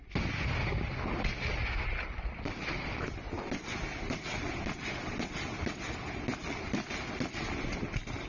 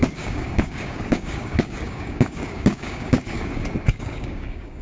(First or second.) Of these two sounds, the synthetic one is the second